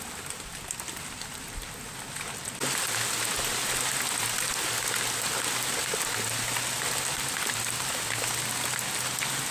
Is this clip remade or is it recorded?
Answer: recorded